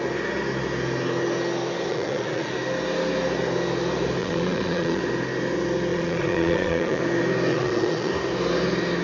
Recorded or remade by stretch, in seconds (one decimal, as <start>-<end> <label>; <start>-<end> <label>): 0.0-1.9 recorded; 1.9-2.5 remade; 2.5-4.2 recorded; 4.2-5.0 remade; 5.0-5.9 recorded; 5.9-7.0 remade; 7.0-7.5 recorded; 7.5-8.1 remade; 8.1-9.0 recorded